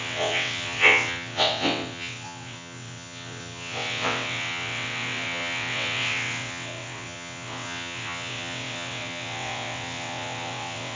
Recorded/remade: remade